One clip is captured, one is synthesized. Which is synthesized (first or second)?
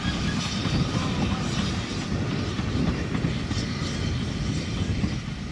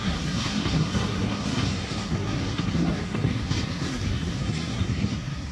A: second